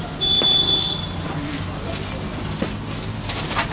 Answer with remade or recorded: recorded